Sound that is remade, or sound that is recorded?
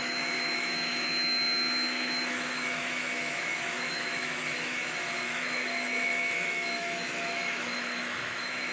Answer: remade